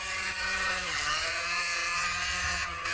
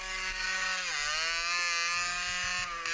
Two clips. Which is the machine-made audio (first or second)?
first